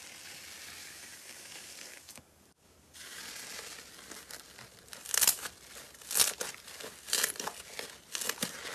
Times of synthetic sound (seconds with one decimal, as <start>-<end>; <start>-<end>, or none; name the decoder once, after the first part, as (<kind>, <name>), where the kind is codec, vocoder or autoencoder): 0.8-3.2 (codec, DAC)

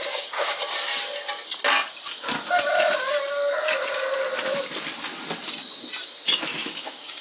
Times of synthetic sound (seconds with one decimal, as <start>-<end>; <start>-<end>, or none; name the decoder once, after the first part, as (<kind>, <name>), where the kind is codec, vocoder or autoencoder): 0.0-0.6 (codec, DAC); 6.6-7.2

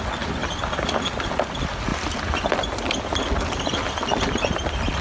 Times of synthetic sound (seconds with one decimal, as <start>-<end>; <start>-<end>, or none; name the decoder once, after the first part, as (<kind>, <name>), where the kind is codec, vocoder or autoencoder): 1.9-5.0 (vocoder, BigVGAN v2)

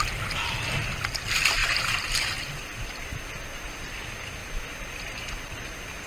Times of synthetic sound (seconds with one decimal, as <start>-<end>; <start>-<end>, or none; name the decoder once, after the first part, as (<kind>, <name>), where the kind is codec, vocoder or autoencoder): none